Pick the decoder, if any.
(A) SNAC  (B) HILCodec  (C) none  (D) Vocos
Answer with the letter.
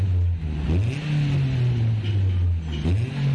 C